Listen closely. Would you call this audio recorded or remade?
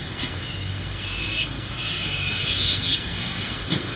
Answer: remade